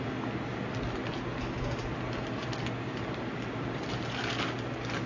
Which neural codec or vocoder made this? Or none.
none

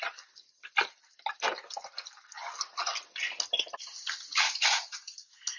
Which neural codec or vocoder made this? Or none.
none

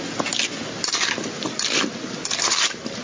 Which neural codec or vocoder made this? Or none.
none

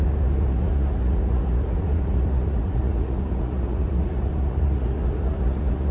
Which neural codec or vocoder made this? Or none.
vocoder, Vocos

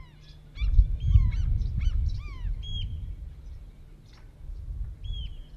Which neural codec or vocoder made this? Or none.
none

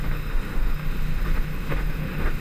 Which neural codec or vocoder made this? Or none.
autoencoder, DAC-VAE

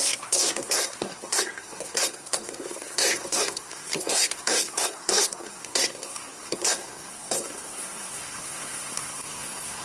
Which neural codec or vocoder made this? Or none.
codec, SNAC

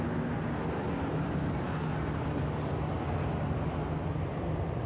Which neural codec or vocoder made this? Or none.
none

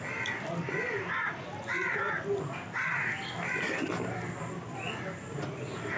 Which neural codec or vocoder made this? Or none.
none